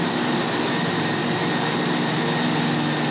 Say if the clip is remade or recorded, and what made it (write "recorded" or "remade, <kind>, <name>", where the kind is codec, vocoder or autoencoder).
recorded